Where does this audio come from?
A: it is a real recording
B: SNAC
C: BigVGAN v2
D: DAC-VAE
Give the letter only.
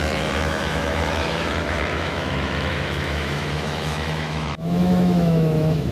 D